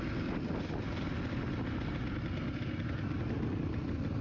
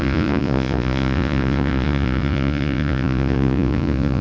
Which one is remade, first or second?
second